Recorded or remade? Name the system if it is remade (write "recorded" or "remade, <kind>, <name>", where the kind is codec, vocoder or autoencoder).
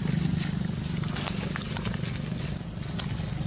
recorded